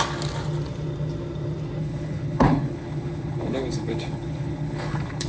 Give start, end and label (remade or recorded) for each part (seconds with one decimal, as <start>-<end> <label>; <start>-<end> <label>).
0.0-1.8 recorded; 1.8-5.3 remade